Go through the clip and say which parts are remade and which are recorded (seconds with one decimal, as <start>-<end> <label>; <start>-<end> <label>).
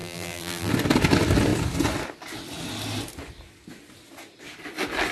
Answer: 0.0-0.7 remade; 0.7-5.1 recorded